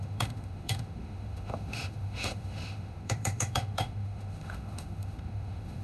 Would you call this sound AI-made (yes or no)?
yes